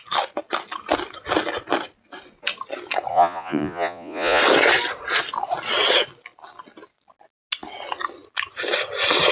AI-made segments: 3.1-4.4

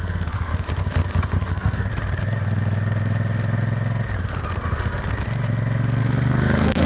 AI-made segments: 0.0-0.5; 1.5-1.9; 6.0-6.9

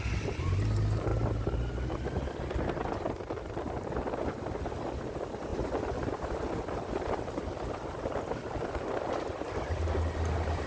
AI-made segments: none

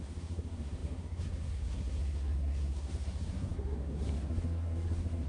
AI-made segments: 0.0-5.3

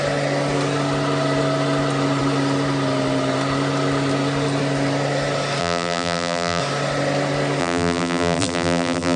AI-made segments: 5.6-6.6; 7.6-9.2

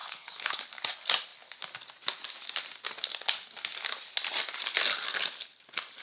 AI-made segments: 0.0-0.6

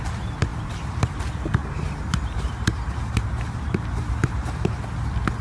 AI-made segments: 0.5-1.2; 1.6-4.8

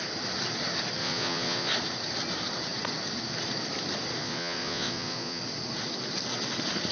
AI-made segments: 1.0-1.7; 4.2-5.4